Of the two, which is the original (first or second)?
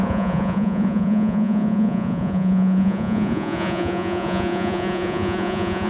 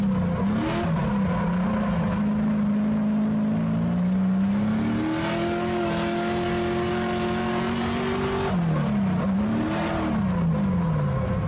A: second